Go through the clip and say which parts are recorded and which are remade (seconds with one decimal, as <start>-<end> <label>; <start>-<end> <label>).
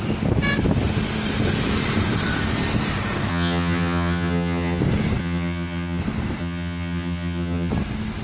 0.0-3.3 recorded; 3.3-4.8 remade; 4.8-5.2 recorded; 5.2-6.0 remade; 6.0-6.4 recorded; 6.4-7.7 remade; 7.7-8.2 recorded